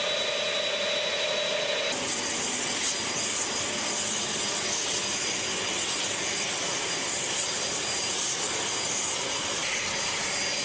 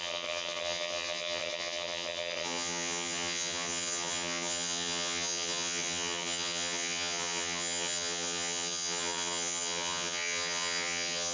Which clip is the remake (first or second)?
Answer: second